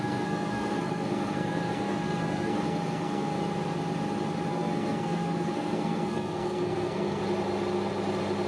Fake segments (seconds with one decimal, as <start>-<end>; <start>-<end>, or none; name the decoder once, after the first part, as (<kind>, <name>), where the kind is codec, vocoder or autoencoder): 0.0-3.3 (codec, SNAC); 4.5-7.2